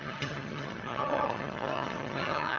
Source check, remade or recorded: remade